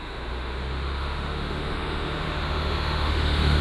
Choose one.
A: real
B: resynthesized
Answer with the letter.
B